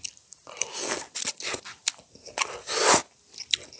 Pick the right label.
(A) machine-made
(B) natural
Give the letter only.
B